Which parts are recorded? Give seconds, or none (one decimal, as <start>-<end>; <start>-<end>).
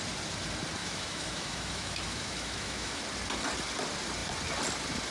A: 0.0-0.8; 3.0-5.1